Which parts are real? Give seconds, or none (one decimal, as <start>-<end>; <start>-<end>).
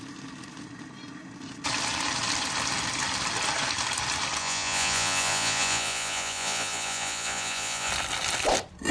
0.0-4.4; 7.9-8.9